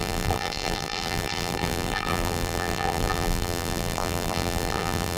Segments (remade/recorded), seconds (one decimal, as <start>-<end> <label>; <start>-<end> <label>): 0.0-5.2 remade